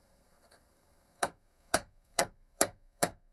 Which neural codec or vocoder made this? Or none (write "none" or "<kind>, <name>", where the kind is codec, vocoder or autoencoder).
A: codec, SNAC